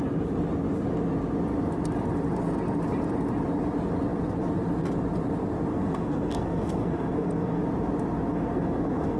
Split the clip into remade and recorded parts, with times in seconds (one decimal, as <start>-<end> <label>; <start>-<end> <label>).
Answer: 0.0-5.7 recorded; 5.7-7.6 remade; 7.6-8.3 recorded; 8.3-9.2 remade